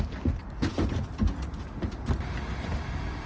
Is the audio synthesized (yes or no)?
yes